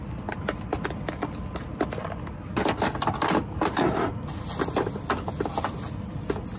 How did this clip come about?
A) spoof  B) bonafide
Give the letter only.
B